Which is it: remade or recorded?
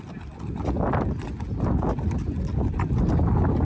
recorded